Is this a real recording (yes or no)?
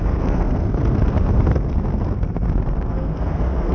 no